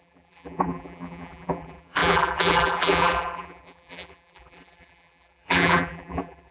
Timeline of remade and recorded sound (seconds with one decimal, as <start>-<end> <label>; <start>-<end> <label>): 0.0-6.5 remade